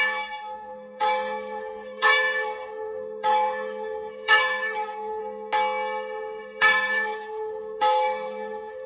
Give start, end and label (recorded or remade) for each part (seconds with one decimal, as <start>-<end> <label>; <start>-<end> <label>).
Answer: 0.0-5.2 remade; 5.2-6.6 recorded; 6.6-8.9 remade